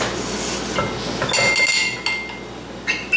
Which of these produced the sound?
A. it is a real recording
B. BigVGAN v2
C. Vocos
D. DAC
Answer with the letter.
A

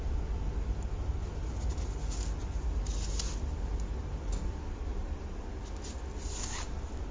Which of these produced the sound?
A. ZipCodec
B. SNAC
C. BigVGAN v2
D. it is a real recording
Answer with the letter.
D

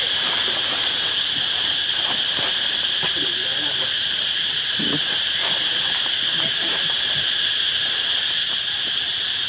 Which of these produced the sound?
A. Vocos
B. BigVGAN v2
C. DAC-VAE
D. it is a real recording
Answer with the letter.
B